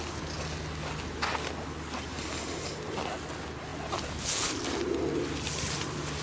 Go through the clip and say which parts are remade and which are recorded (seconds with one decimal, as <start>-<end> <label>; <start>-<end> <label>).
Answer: 0.0-6.2 recorded